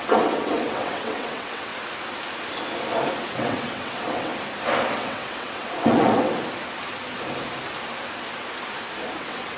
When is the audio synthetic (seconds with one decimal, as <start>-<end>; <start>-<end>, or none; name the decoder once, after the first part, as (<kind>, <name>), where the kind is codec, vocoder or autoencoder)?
0.0-1.7 (vocoder, WaveNeXt); 3.3-4.3; 4.9-6.3; 9.2-9.6